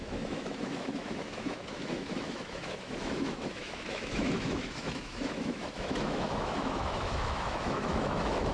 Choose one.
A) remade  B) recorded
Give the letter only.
A